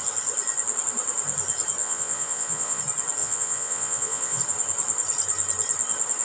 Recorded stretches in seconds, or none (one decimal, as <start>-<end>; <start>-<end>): 0.0-1.8; 2.8-3.2; 4.4-6.2